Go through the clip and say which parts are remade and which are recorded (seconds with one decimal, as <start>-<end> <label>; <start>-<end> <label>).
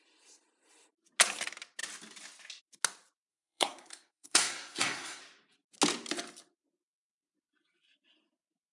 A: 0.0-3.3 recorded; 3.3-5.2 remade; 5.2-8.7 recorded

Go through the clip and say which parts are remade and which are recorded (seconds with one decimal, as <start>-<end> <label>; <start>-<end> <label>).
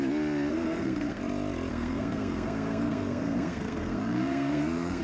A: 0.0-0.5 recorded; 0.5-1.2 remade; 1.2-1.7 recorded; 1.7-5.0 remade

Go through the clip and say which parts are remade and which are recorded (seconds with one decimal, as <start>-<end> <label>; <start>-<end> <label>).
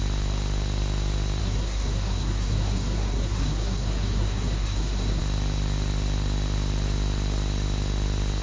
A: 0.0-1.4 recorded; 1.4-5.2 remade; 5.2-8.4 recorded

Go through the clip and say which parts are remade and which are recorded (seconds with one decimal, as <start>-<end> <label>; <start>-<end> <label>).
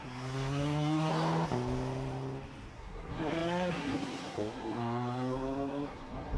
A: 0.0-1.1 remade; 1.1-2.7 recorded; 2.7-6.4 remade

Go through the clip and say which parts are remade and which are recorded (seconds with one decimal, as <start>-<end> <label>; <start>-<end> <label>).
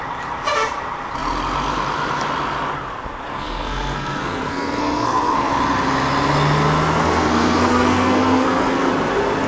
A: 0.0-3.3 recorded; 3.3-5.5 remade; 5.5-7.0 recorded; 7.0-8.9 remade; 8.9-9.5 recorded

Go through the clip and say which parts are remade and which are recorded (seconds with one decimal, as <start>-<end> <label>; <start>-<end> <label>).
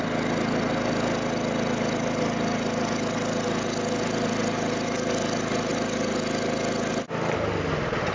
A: 0.0-8.1 recorded